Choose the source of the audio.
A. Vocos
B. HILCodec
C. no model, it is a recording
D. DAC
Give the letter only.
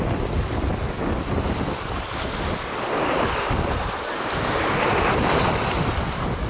C